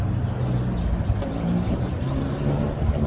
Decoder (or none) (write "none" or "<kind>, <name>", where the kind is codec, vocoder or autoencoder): none